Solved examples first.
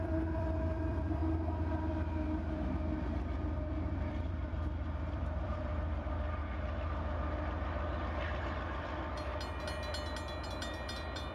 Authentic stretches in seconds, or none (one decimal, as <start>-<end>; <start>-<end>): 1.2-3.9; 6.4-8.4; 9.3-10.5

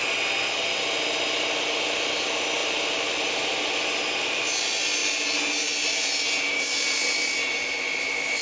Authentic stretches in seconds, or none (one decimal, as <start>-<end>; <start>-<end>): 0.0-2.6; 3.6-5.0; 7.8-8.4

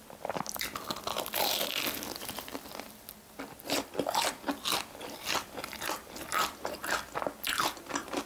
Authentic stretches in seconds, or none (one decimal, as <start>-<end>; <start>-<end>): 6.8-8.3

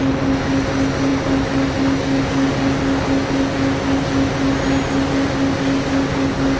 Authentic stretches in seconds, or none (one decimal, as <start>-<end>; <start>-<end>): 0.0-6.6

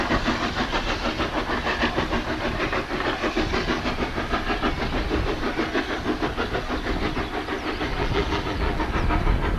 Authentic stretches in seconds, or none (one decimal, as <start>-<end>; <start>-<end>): 0.0-7.9; 8.8-9.6

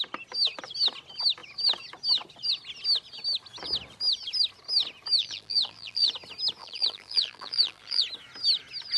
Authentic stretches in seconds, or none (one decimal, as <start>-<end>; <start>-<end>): 0.0-5.2; 6.1-6.6; 8.0-9.0

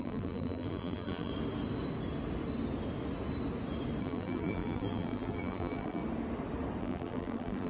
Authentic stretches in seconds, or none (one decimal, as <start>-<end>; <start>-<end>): 1.3-4.0; 6.0-6.8